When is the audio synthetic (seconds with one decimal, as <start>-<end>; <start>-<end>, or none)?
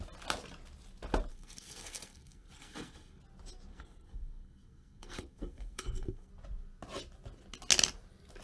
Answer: 1.3-3.2; 3.7-6.3